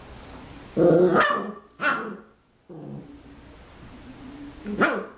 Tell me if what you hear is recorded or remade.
recorded